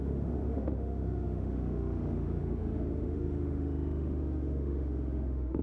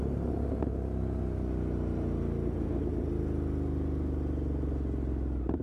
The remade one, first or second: first